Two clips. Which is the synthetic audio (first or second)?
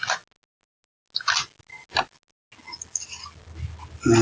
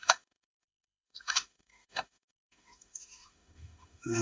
second